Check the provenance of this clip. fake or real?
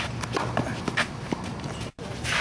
real